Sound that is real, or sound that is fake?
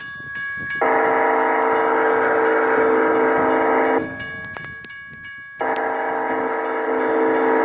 real